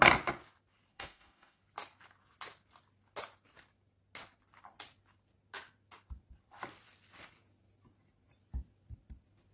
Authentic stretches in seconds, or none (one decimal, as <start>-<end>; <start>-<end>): 0.0-0.9; 1.6-9.5